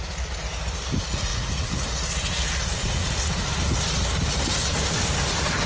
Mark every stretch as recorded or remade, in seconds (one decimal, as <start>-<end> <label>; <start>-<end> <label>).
0.0-1.3 recorded; 1.3-1.8 remade; 1.8-2.8 recorded; 2.8-3.3 remade; 3.3-5.7 recorded